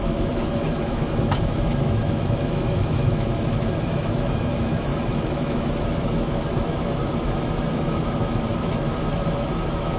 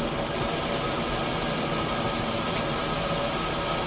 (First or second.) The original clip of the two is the second